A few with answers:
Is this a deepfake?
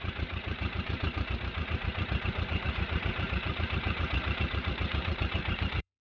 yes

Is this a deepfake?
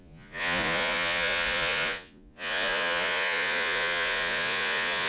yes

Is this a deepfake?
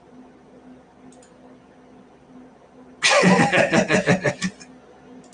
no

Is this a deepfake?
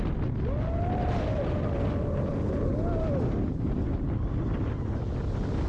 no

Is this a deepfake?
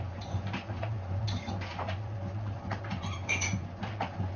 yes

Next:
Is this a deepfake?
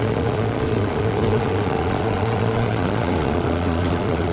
yes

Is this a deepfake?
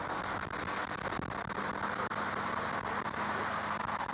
no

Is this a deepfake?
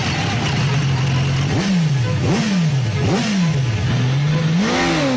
no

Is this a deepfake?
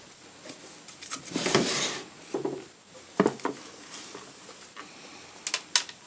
no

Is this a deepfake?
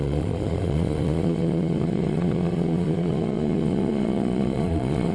yes